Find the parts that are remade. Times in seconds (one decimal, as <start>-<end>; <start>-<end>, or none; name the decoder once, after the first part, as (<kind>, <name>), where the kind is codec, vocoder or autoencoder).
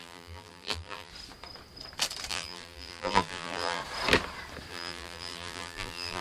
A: 0.0-1.1 (vocoder, BigVGAN v2); 2.3-3.8; 4.7-6.2